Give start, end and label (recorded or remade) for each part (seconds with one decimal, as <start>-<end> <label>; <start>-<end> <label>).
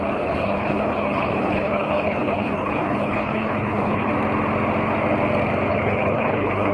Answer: 0.0-4.1 remade; 4.1-5.7 recorded; 5.7-6.7 remade